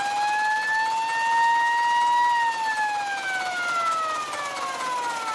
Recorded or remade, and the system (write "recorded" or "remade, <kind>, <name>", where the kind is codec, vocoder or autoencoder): recorded